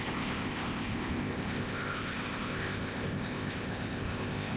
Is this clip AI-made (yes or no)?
yes